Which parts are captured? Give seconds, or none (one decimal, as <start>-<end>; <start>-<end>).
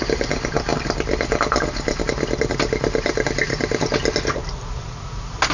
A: 0.0-5.5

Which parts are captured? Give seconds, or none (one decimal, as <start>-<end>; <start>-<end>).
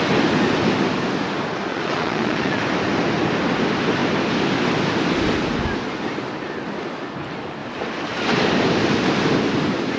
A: 0.0-1.7; 2.6-10.0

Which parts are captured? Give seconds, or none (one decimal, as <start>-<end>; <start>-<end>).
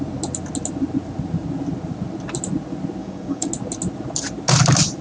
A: 0.0-3.0; 3.5-5.0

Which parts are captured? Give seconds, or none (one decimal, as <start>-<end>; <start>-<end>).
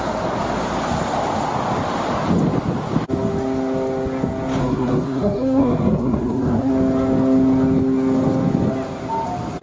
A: 0.0-4.6; 6.7-9.6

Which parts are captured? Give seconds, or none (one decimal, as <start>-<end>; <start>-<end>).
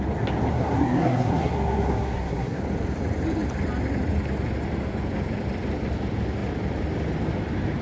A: 0.0-0.5; 2.6-7.8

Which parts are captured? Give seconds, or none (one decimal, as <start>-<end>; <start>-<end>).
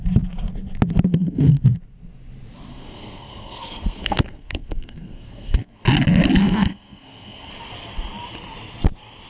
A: 0.0-1.1; 1.6-2.7; 5.8-6.4; 7.5-9.3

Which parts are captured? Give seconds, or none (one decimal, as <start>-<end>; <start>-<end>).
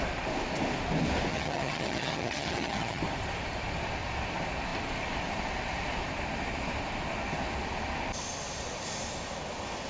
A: 0.0-1.3; 3.0-9.9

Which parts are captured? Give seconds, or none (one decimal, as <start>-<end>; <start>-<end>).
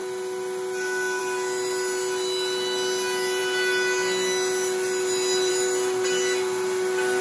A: 0.0-7.2